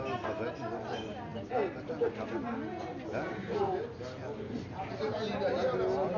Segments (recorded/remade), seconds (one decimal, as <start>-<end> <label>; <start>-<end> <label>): 0.0-6.2 recorded